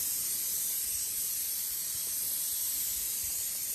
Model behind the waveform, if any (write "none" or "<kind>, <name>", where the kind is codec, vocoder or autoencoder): vocoder, BigVGAN v2